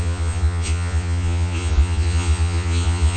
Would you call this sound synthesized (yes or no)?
yes